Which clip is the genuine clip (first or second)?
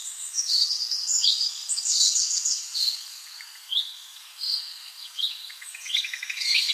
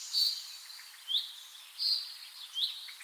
second